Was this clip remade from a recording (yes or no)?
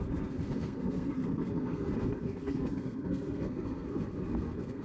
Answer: yes